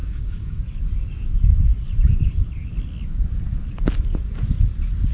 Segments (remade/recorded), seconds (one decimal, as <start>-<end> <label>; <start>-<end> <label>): 0.0-0.6 remade; 0.6-5.1 recorded